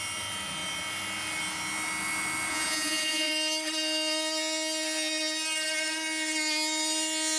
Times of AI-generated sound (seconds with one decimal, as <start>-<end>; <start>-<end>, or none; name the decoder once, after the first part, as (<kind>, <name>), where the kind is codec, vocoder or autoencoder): 2.5-3.3 (vocoder, Vocos)